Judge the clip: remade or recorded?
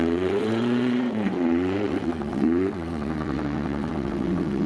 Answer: remade